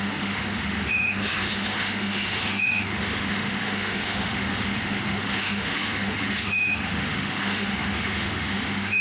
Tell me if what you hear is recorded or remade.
remade